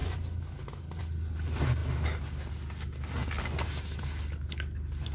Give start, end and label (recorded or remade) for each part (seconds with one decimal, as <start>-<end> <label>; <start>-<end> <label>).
0.0-5.1 recorded